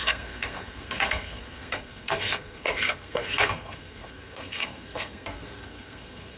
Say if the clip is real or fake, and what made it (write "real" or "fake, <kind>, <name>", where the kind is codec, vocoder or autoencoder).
fake, codec, SNAC